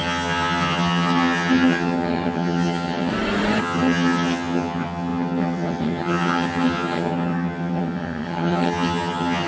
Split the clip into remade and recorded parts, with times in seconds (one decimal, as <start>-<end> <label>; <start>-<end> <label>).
0.0-3.1 remade; 3.1-3.6 recorded; 3.6-9.5 remade

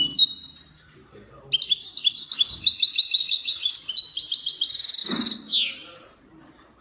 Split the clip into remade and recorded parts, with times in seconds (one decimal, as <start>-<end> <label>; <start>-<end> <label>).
0.0-3.2 recorded; 3.2-3.7 remade; 3.7-6.8 recorded